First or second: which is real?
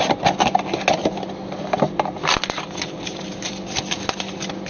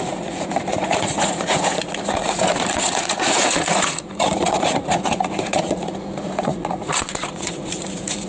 first